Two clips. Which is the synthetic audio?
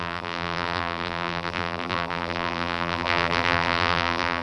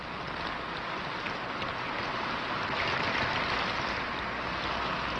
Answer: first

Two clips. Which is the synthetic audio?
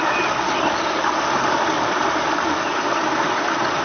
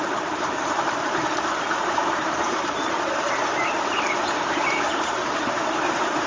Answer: second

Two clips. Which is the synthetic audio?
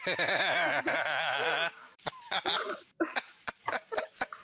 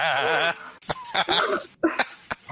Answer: first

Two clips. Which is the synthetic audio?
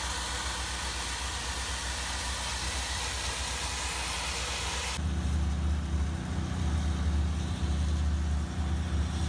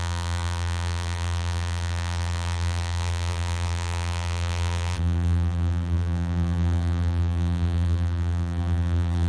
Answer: second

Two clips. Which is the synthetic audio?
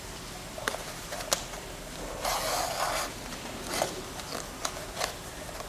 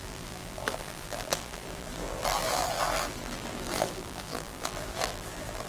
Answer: second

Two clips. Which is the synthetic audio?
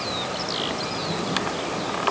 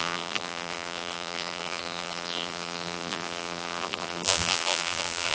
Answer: second